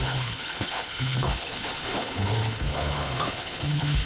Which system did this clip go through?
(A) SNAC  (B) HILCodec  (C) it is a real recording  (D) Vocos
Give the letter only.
B